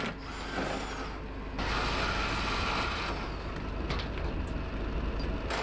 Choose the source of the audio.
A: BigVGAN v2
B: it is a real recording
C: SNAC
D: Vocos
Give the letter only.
B